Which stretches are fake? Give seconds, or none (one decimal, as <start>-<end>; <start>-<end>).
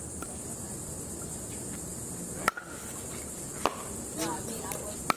none